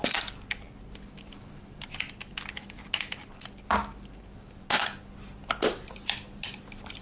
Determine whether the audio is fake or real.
real